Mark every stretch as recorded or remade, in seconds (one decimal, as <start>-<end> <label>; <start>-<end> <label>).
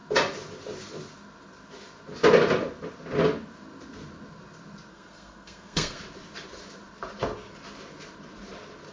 0.0-4.9 recorded; 4.9-6.0 remade; 6.0-8.9 recorded